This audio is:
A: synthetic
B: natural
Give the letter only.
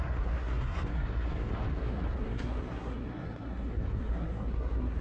A